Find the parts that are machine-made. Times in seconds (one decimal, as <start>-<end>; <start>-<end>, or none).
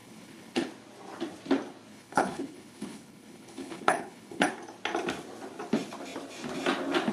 0.0-0.7; 1.9-4.5